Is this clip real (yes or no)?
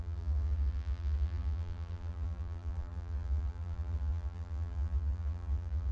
no